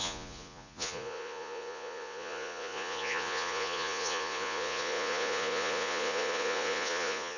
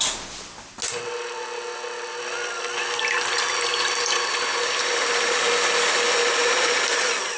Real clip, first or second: second